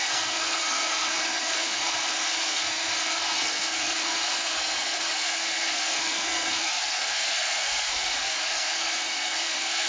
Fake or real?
fake